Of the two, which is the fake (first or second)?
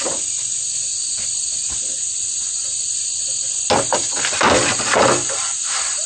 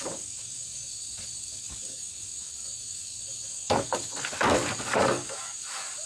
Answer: second